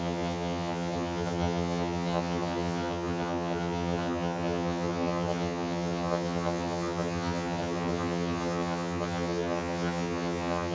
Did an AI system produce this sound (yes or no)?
yes